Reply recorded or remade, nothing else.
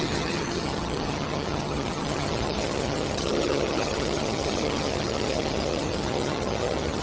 remade